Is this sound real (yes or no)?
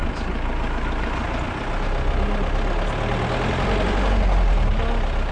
yes